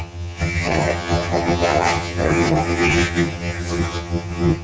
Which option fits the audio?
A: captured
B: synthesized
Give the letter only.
B